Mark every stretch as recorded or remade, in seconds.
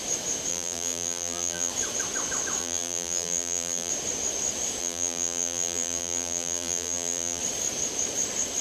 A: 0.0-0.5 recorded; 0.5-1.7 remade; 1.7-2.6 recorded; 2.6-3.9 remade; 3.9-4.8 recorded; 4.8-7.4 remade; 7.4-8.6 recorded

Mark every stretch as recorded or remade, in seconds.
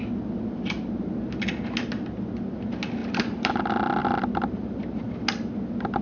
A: 0.0-3.0 recorded; 3.0-3.6 remade; 3.6-4.0 recorded; 4.0-5.1 remade; 5.1-6.0 recorded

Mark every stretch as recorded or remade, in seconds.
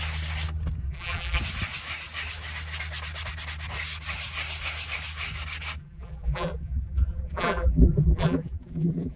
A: 0.0-0.8 recorded; 0.8-1.4 remade; 1.4-5.8 recorded; 5.8-9.2 remade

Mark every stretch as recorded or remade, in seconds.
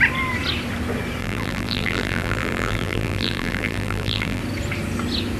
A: 0.0-1.2 recorded; 1.2-4.4 remade; 4.4-5.4 recorded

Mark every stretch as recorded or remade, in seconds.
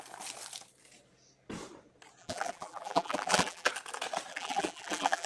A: 0.0-2.2 recorded; 2.2-3.7 remade; 3.7-4.3 recorded; 4.3-5.3 remade